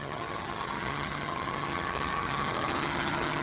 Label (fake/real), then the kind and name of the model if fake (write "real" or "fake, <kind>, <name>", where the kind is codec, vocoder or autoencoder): fake, vocoder, HiFi-GAN